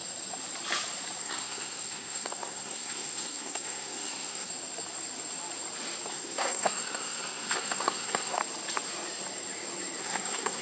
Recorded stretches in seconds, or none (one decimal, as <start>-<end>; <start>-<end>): 0.0-1.2; 4.5-6.1; 8.4-10.0